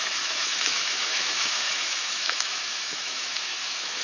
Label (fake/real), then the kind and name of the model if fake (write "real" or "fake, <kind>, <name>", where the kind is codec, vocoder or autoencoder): fake, autoencoder, DAC-VAE